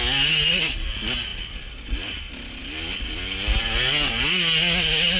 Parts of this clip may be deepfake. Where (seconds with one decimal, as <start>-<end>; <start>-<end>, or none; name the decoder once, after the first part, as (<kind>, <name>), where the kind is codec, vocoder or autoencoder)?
none